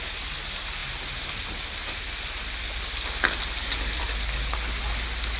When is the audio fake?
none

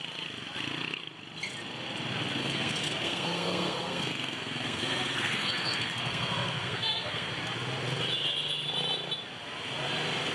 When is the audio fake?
2.4-7.3

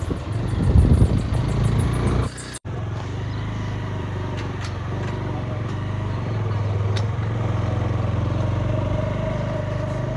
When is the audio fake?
2.2-7.2

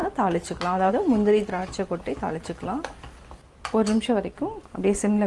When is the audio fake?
none

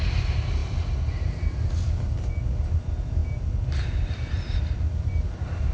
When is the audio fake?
none

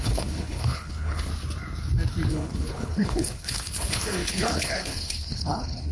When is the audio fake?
0.0-1.3; 2.3-5.9

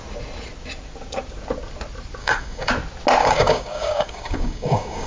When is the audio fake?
2.2-2.7; 3.2-5.1

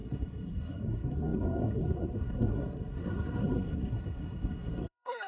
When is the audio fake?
0.0-5.3